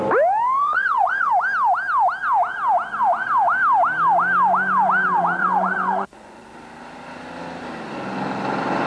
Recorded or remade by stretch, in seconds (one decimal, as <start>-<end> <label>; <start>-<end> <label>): 0.0-0.6 recorded; 0.6-1.3 remade; 1.3-5.4 recorded; 5.4-6.4 remade; 6.4-8.9 recorded